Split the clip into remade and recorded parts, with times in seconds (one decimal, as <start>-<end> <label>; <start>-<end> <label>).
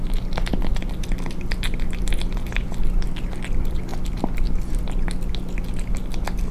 0.0-6.5 recorded